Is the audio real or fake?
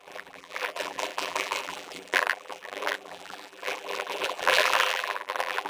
fake